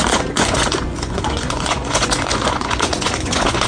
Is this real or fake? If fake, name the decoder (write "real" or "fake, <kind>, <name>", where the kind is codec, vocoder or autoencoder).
fake, vocoder, Vocos